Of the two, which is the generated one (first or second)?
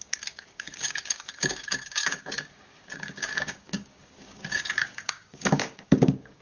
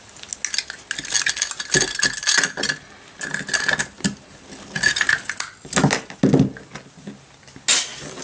first